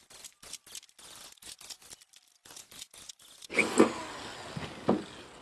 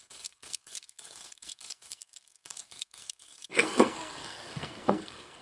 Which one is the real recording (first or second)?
first